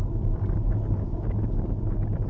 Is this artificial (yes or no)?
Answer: no